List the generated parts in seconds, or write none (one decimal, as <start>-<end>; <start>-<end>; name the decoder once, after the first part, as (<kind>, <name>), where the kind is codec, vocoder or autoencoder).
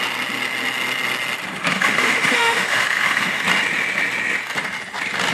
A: 1.7-3.4 (autoencoder, DAC-VAE)